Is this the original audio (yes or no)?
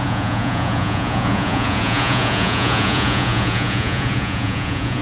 no